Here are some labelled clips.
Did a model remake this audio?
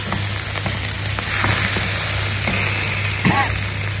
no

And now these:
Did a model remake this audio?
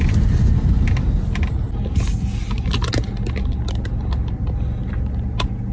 no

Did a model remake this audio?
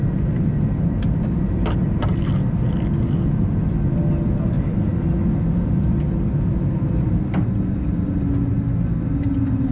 no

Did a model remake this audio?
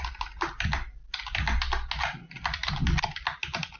no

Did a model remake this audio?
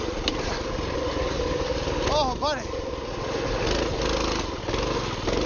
no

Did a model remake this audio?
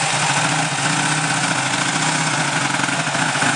yes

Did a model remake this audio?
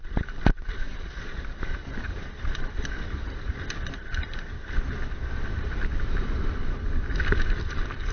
no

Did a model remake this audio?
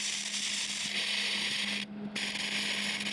no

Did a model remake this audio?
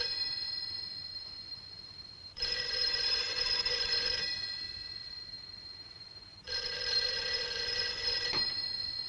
yes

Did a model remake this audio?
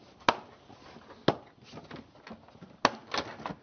no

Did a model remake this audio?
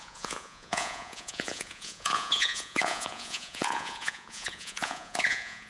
yes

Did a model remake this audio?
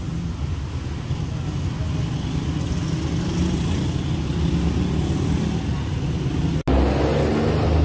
no